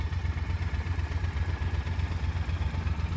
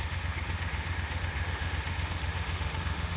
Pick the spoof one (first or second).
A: second